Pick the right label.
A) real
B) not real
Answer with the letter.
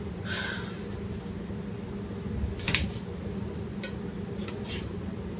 A